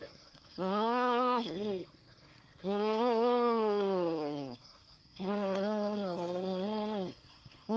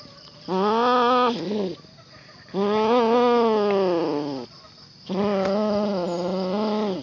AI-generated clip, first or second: first